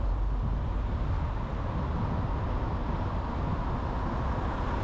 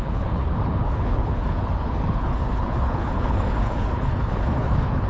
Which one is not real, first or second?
second